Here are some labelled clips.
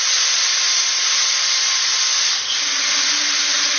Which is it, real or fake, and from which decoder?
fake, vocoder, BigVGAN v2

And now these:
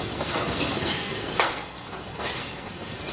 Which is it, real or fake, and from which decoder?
fake, codec, SNAC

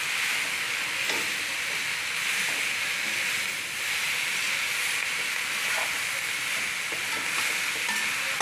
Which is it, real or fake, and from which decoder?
real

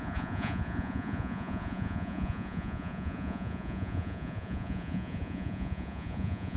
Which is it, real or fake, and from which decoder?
fake, vocoder, Vocos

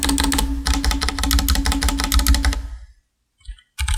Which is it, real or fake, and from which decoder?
real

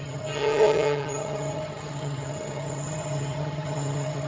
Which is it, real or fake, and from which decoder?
fake, vocoder, HiFi-GAN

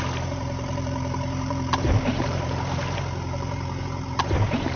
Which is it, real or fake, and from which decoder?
fake, vocoder, BigVGAN v2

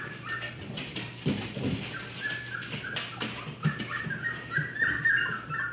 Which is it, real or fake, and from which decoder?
real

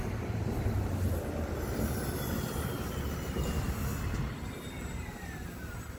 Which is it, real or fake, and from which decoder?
real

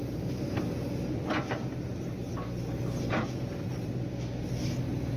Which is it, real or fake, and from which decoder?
real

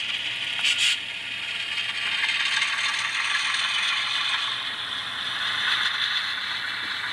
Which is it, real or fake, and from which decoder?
real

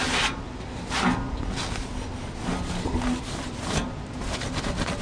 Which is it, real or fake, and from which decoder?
real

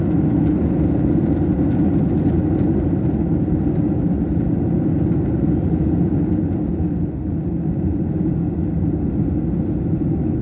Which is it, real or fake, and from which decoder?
real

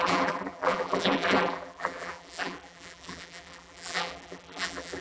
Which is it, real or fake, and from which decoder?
fake, vocoder, BigVGAN v2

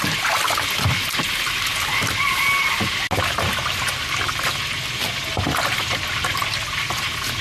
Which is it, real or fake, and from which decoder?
real